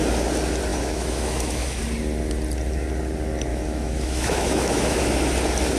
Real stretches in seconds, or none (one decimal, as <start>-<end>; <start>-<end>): 0.0-0.7; 1.8-3.5; 5.0-5.8